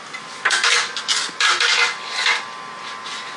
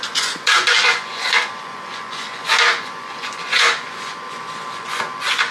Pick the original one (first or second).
first